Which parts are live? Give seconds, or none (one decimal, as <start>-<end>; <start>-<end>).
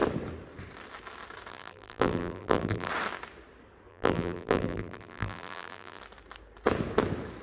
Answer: 0.0-1.5; 2.9-3.9; 6.0-7.4